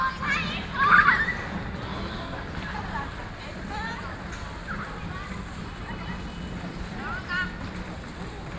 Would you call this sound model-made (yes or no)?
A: no